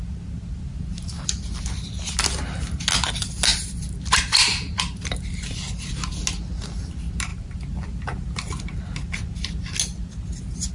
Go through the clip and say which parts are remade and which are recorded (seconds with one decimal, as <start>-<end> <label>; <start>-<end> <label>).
0.0-3.5 recorded; 3.5-4.0 remade; 4.0-7.3 recorded; 7.3-8.8 remade; 8.8-10.7 recorded